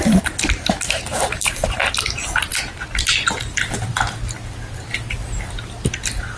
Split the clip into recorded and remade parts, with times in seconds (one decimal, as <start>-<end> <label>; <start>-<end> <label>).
0.0-6.4 recorded